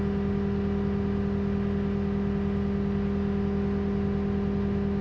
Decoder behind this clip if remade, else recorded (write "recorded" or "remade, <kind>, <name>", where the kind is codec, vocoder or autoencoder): recorded